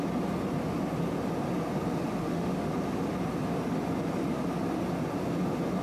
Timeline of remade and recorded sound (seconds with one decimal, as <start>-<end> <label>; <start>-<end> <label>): 0.0-2.2 recorded; 2.2-2.7 remade; 2.7-5.8 recorded